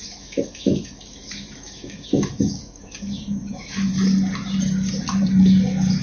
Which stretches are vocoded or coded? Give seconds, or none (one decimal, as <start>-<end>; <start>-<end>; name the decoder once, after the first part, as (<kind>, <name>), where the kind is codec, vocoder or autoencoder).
0.0-3.9 (autoencoder, DAC-VAE)

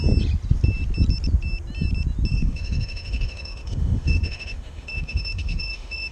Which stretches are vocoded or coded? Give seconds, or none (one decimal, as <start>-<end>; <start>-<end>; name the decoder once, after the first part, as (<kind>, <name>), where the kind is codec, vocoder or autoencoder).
2.3-6.1 (autoencoder, DAC-VAE)

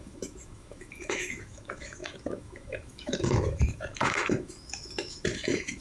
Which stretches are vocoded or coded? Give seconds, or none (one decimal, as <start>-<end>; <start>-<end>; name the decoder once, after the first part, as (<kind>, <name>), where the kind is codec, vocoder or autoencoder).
0.0-5.8 (autoencoder, DAC-VAE)

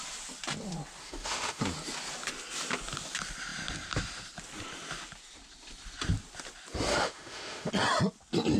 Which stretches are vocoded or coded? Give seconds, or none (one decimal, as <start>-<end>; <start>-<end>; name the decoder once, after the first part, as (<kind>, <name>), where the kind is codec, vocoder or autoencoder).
1.0-1.6 (autoencoder, DAC-VAE); 6.9-7.7

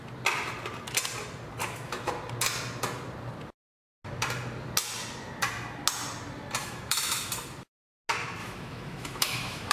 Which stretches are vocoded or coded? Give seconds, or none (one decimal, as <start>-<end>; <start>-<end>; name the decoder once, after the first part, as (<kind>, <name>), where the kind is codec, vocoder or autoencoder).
1.6-2.1 (autoencoder, DAC-VAE); 6.6-7.3; 8.4-9.7